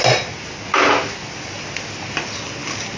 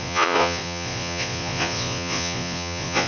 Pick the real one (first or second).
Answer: first